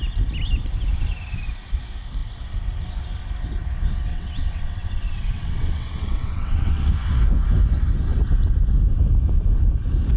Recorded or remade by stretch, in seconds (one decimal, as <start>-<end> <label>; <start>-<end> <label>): 0.0-4.1 recorded; 4.1-6.9 remade; 6.9-10.2 recorded